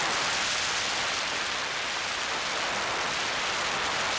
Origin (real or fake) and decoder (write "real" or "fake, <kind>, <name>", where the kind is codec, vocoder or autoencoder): real